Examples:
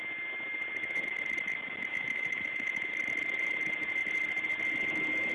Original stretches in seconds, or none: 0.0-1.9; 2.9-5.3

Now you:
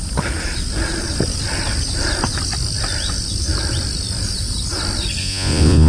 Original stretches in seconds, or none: 0.0-5.2

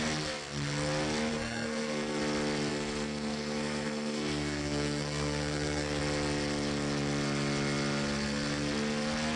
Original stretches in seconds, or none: 0.0-1.3; 2.2-2.7; 6.0-9.4

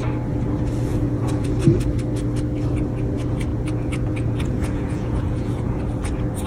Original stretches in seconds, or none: 0.0-0.9; 1.5-3.5; 5.8-6.5

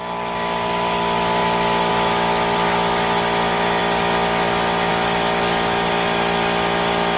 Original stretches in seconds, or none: 0.0-1.4; 1.9-7.2